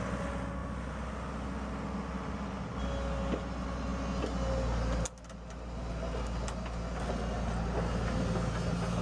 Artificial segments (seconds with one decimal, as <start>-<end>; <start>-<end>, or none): none